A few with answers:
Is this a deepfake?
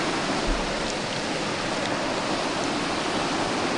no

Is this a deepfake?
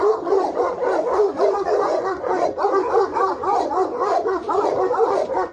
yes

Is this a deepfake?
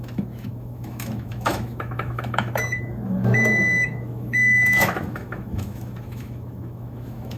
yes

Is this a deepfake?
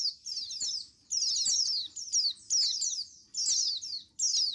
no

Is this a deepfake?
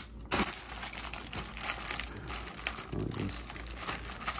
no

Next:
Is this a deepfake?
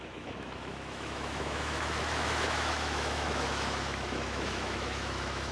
yes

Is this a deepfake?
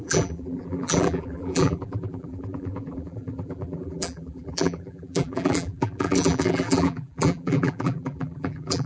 yes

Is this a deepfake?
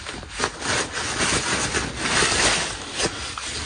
no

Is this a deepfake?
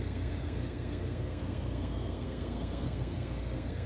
yes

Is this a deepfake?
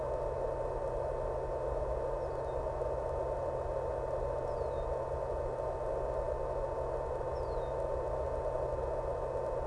no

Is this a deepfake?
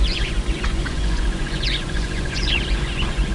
yes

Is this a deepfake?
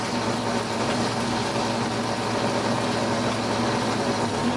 no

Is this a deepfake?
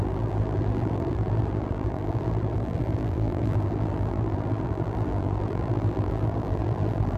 yes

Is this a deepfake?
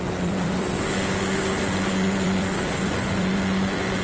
yes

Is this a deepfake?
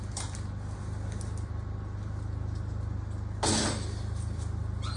no